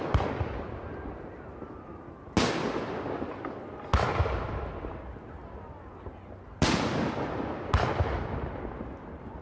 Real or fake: real